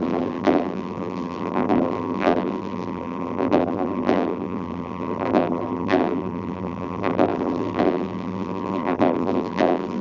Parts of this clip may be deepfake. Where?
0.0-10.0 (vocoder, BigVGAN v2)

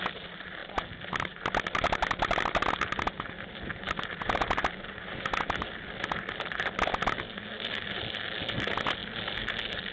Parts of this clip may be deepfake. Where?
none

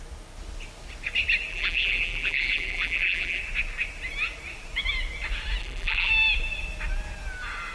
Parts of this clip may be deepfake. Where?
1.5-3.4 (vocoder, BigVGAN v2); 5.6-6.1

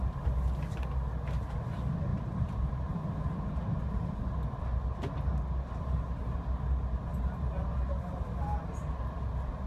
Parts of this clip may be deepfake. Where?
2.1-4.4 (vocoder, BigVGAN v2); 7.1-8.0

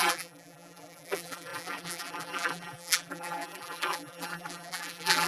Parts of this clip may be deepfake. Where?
0.0-5.3 (vocoder, BigVGAN v2)

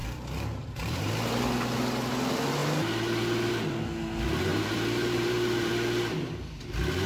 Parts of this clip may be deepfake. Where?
0.0-1.1 (vocoder, BigVGAN v2); 4.5-5.7

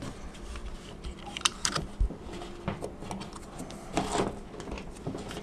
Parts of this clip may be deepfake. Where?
0.6-1.8 (vocoder, BigVGAN v2)

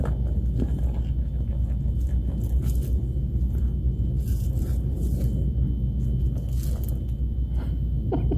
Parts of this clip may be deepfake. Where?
4.3-5.2 (vocoder, BigVGAN v2)